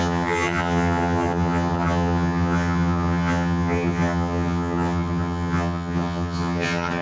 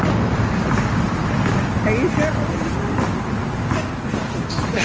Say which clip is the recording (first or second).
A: second